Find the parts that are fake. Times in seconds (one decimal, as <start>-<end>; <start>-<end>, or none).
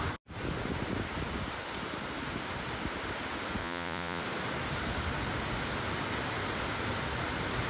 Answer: 3.6-4.2